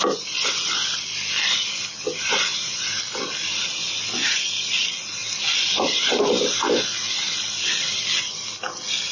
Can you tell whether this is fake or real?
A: real